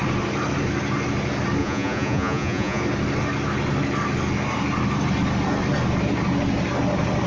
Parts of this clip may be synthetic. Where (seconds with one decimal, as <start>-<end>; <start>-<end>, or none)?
1.6-2.8